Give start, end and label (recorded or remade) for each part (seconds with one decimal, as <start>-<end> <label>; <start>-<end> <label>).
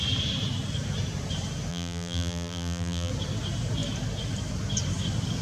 0.0-1.7 recorded; 1.7-3.1 remade; 3.1-5.4 recorded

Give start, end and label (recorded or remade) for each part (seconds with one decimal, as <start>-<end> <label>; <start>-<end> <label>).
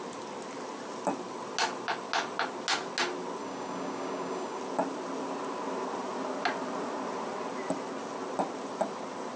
0.0-3.4 recorded; 3.4-4.6 remade; 4.6-9.4 recorded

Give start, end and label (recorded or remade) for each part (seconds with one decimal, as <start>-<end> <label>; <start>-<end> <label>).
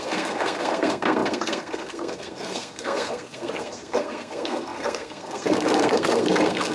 0.0-6.7 remade